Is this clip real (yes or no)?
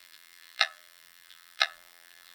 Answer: no